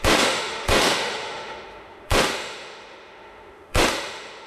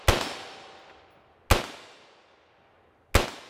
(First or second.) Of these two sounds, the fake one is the first